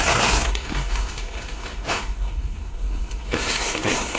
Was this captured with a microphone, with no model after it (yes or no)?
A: no